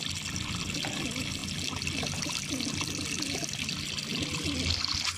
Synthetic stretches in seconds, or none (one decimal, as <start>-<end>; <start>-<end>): none